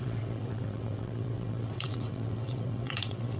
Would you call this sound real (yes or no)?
no